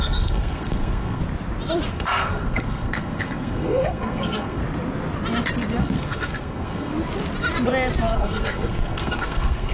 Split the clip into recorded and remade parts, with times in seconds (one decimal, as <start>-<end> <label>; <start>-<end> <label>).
0.0-1.2 remade; 1.2-1.9 recorded; 1.9-4.6 remade; 4.6-5.8 recorded; 5.8-6.9 remade; 6.9-8.1 recorded; 8.1-9.7 remade